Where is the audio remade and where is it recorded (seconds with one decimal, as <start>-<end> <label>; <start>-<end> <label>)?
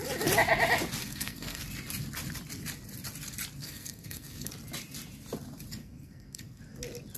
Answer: 0.0-1.0 recorded; 1.0-1.6 remade; 1.6-3.6 recorded; 3.6-4.5 remade; 4.5-5.8 recorded; 5.8-6.6 remade; 6.6-7.2 recorded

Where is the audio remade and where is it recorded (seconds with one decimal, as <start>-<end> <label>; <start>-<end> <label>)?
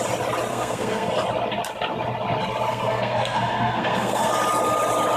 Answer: 0.0-0.5 recorded; 0.5-1.1 remade; 1.1-2.7 recorded; 2.7-4.3 remade; 4.3-5.2 recorded